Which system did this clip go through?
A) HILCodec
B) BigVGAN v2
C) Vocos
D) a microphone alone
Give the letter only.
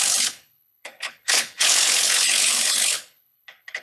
A